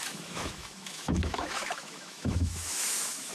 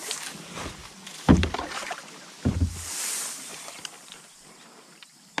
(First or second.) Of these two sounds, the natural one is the second